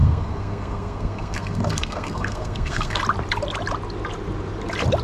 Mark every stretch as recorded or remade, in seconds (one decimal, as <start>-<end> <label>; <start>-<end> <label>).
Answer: 0.0-3.0 remade; 3.0-5.0 recorded